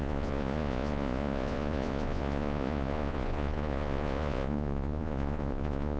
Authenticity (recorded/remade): remade